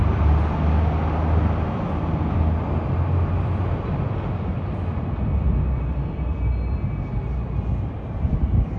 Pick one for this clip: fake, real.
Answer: real